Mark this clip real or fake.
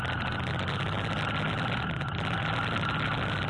real